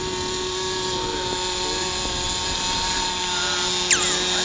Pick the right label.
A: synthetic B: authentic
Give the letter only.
B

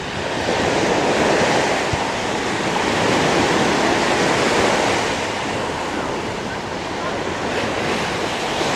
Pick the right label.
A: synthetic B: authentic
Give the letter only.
B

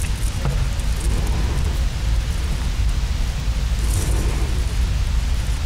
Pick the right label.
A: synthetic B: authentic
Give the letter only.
B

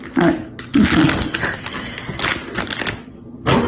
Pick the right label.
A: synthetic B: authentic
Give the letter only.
B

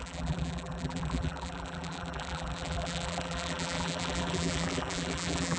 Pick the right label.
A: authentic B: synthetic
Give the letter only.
B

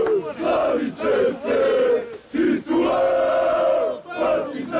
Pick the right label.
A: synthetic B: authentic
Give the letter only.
B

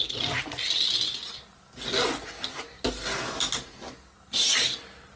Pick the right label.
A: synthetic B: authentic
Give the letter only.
B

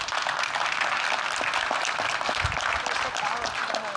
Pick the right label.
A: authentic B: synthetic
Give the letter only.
A